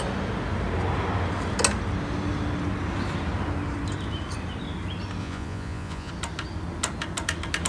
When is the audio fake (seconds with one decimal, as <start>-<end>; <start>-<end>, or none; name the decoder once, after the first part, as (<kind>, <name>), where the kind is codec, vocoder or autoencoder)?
5.2-6.1 (vocoder, Vocos)